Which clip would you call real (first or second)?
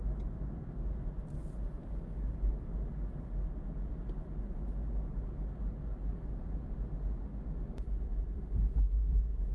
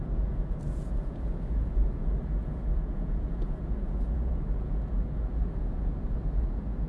first